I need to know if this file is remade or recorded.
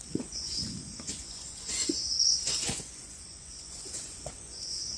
remade